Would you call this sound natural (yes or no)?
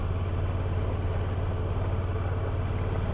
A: yes